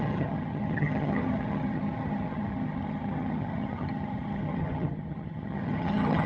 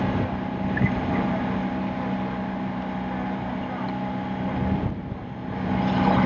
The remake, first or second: first